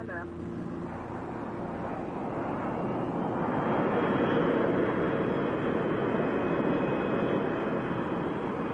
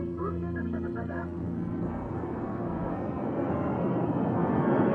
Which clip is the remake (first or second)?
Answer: second